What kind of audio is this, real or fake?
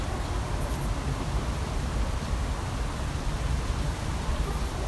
fake